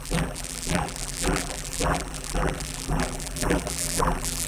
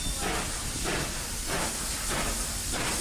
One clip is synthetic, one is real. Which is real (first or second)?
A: second